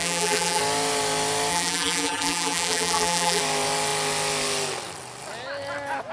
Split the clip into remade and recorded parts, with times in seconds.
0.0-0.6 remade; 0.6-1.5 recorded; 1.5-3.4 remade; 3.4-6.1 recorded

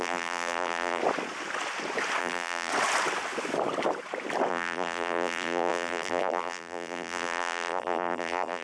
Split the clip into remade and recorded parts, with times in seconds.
0.0-1.0 remade; 1.0-2.2 recorded; 2.2-2.7 remade; 2.7-4.5 recorded; 4.5-8.6 remade

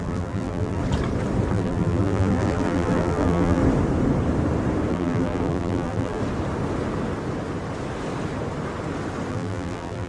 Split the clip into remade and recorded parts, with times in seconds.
0.0-0.8 remade; 0.8-1.5 recorded; 1.5-3.6 remade; 3.6-4.9 recorded; 4.9-6.2 remade; 6.2-9.3 recorded; 9.3-10.1 remade

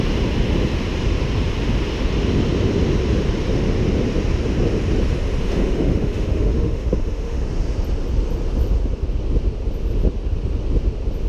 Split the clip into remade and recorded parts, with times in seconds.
0.0-5.4 recorded; 5.4-7.4 remade; 7.4-11.3 recorded

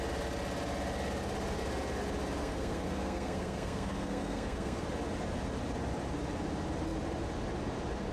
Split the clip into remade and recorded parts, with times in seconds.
0.0-2.4 recorded; 2.4-4.8 remade; 4.8-8.1 recorded

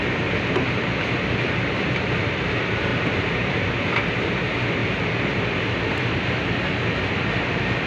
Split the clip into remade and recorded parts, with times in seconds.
0.0-2.9 recorded; 2.9-3.5 remade; 3.5-4.8 recorded; 4.8-6.3 remade; 6.3-7.9 recorded

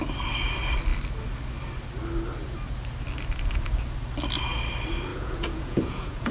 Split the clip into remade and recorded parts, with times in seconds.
0.0-5.1 recorded; 5.1-6.3 remade